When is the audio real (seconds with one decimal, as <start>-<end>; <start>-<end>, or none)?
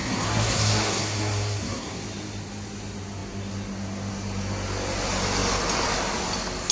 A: 2.0-6.7